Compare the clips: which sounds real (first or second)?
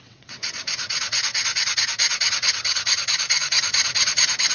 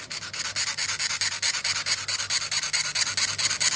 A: second